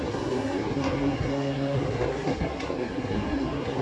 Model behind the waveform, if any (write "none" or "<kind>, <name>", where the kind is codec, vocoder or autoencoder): codec, SNAC